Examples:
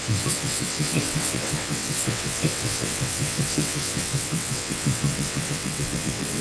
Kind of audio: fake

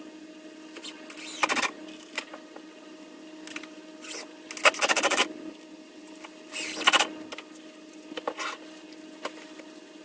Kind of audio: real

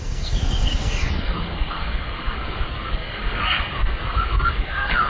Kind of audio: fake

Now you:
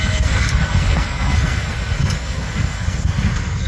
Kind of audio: fake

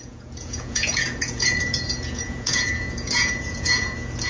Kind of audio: fake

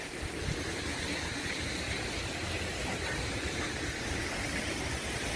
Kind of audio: real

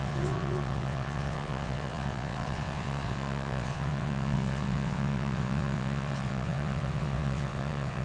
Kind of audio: fake